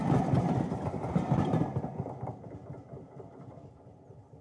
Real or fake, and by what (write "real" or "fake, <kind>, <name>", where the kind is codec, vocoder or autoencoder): real